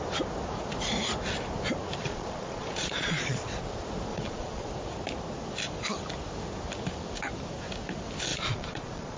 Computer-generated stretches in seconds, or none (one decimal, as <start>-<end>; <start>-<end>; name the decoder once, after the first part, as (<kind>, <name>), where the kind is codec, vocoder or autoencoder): 2.0-3.6 (vocoder, Vocos); 4.1-4.7; 8.3-9.2